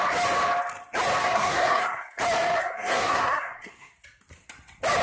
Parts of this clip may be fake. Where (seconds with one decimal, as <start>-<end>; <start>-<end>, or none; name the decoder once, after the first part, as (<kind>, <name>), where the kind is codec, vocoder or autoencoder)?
1.2-2.2 (codec, SNAC); 2.6-3.9